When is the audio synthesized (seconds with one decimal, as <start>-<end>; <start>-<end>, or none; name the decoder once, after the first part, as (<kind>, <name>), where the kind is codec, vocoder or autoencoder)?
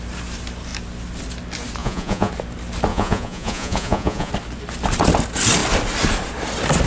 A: 1.8-2.3 (vocoder, Vocos); 2.9-4.3